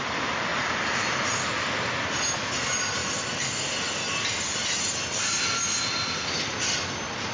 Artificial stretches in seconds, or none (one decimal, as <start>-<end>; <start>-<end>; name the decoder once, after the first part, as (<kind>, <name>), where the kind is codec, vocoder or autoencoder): none